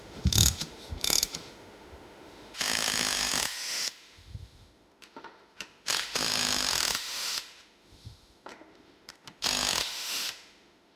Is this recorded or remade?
remade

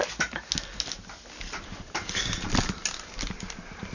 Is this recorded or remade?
recorded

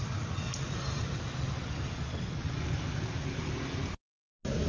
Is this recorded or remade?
recorded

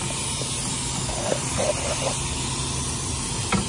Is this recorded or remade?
recorded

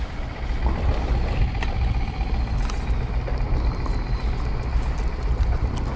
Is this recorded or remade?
recorded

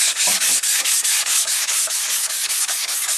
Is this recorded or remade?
remade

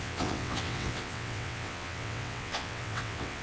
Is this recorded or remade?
remade